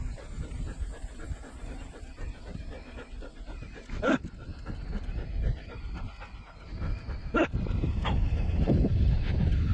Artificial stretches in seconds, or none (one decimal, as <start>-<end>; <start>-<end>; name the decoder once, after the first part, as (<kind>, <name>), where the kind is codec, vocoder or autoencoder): 6.7-9.1 (vocoder, BigVGAN v2)